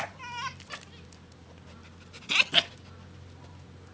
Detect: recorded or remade recorded